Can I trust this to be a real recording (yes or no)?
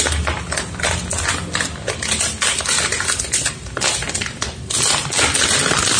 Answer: yes